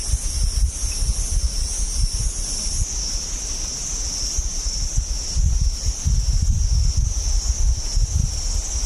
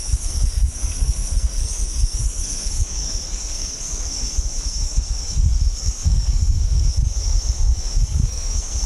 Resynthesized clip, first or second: second